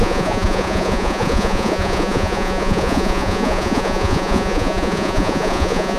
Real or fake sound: fake